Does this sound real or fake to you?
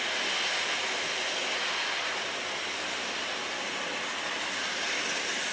real